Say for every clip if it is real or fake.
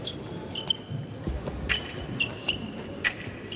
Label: fake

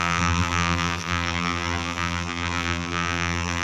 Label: fake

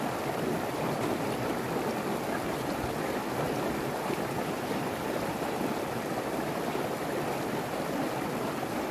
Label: real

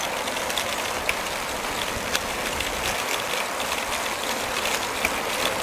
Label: real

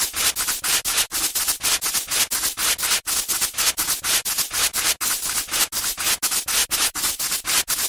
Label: real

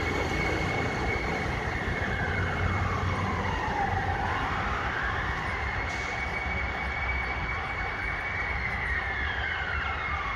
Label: fake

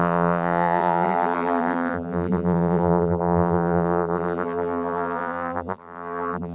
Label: fake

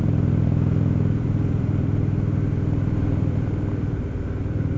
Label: fake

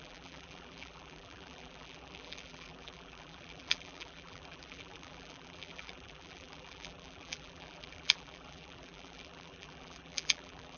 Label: fake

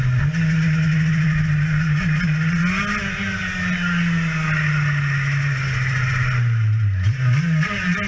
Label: real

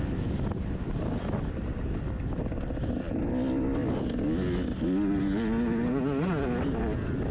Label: real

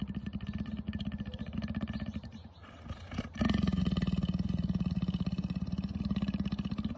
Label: fake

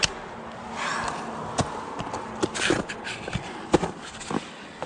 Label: real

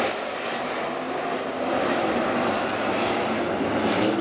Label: fake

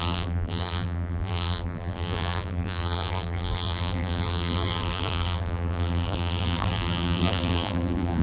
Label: fake